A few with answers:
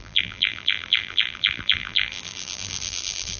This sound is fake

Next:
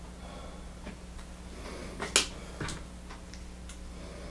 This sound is real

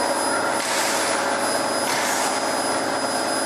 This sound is real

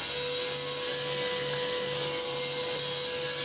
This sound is real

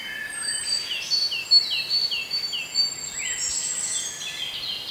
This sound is real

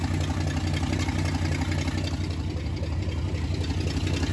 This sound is real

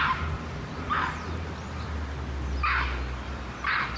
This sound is real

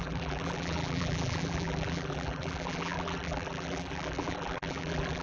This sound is fake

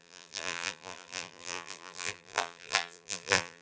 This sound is fake